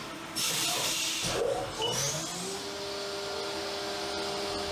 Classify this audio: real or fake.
real